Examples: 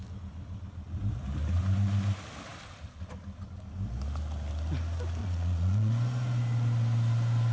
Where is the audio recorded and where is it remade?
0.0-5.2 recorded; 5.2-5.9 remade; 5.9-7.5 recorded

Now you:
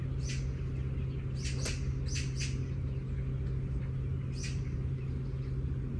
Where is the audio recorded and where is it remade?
0.0-6.0 recorded